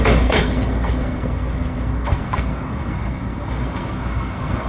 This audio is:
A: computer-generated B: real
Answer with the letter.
A